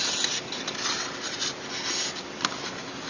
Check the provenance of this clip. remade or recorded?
recorded